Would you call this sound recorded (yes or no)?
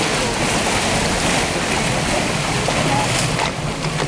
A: yes